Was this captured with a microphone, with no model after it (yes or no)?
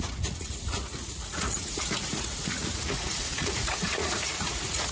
no